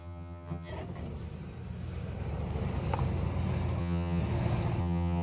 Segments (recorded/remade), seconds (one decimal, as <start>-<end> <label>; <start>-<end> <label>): 0.0-0.7 remade; 0.7-3.8 recorded; 3.8-4.2 remade; 4.2-4.8 recorded; 4.8-5.2 remade